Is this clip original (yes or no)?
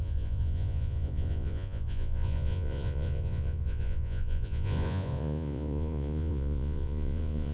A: no